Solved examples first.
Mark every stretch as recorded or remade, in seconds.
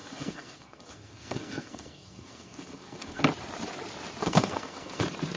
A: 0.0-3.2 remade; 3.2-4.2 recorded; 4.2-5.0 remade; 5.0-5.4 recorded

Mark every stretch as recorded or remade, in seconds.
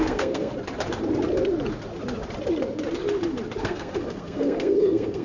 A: 0.0-0.5 remade; 0.5-3.6 recorded; 3.6-5.2 remade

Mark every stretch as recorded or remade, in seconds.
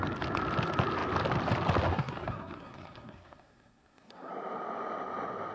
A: 0.0-1.9 recorded; 1.9-4.3 remade; 4.3-5.5 recorded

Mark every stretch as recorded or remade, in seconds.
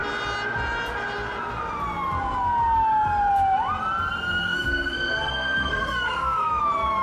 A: 0.0-4.4 recorded; 4.4-6.6 remade; 6.6-7.0 recorded